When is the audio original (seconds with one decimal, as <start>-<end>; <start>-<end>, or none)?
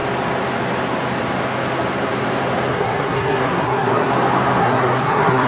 0.0-2.7; 4.1-4.6